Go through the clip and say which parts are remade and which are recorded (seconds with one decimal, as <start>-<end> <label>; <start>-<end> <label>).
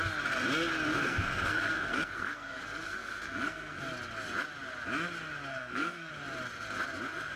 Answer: 0.0-0.9 recorded; 0.9-3.8 remade; 3.8-5.5 recorded; 5.5-6.1 remade; 6.1-7.4 recorded